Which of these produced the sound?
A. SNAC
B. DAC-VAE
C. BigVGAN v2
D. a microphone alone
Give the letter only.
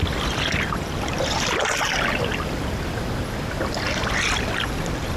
D